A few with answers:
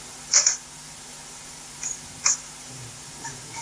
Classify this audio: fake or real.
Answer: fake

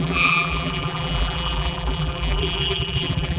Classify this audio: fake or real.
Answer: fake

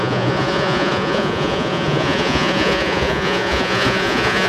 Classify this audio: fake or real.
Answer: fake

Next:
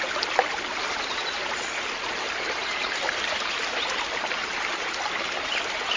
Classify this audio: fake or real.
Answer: real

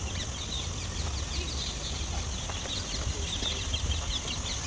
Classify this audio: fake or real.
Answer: real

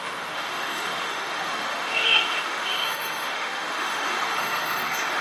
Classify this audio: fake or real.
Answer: fake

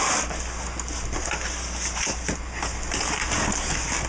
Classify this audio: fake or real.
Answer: real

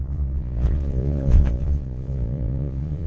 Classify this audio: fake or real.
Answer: fake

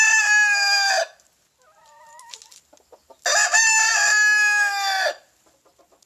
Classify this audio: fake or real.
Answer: real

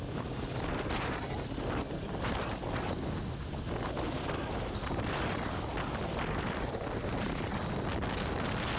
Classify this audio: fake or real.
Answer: real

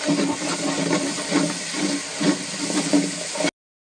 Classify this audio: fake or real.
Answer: real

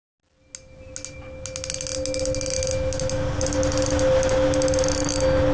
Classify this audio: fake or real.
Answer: real